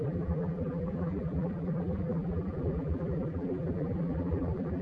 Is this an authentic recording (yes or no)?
no